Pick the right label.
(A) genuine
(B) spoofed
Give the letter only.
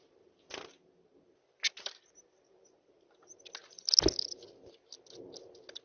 A